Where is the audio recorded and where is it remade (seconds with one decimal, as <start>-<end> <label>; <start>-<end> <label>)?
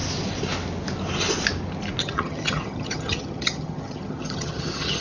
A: 0.0-2.0 recorded; 2.0-5.0 remade